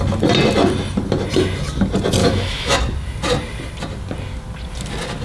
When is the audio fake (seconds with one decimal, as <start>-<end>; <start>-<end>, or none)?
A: 2.2-2.8